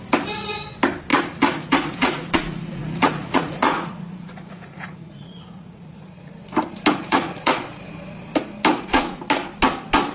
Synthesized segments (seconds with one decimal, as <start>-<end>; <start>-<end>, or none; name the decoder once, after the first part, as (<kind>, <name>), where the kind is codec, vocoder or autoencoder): 1.1-6.3 (vocoder, Vocos); 6.9-7.6; 8.7-9.2